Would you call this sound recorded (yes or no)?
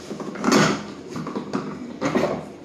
yes